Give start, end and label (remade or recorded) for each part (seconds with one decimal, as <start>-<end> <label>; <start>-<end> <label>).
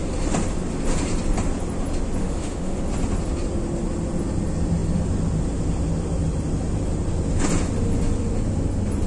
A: 0.0-2.2 recorded; 2.2-2.8 remade; 2.8-9.1 recorded